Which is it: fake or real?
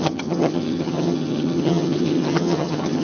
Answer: fake